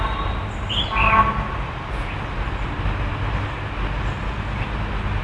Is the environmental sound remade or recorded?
recorded